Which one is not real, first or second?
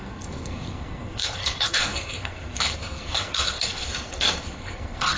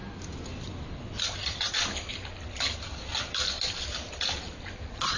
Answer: first